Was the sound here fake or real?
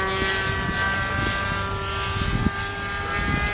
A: real